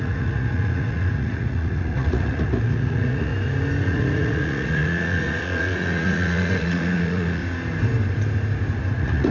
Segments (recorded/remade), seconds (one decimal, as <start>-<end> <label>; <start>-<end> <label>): 0.0-3.3 remade; 3.3-3.8 recorded; 3.8-7.4 remade; 7.4-8.9 recorded; 8.9-9.3 remade